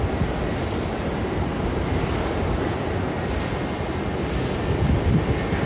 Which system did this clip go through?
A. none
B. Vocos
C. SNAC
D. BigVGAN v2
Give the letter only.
A